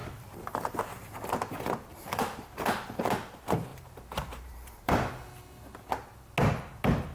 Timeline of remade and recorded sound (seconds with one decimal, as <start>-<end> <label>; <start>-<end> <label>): 0.0-1.9 recorded; 1.9-3.0 remade; 3.0-3.7 recorded; 3.7-5.1 remade; 5.1-7.1 recorded